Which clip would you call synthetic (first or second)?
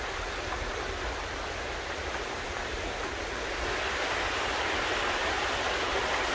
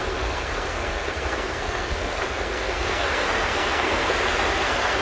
second